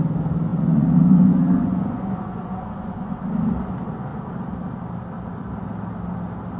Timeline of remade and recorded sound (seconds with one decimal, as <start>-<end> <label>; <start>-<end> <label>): 0.0-0.5 recorded; 0.5-3.1 remade; 3.1-6.6 recorded